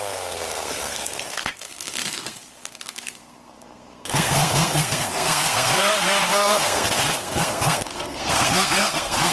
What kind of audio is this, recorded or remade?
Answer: remade